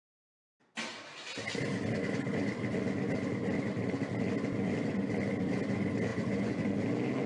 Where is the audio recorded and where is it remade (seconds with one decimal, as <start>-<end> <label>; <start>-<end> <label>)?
0.0-6.1 recorded; 6.1-6.6 remade; 6.6-7.3 recorded